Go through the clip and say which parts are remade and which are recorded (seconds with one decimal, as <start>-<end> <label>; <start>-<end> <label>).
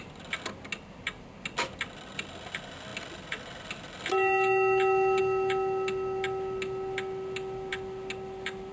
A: 0.0-8.7 recorded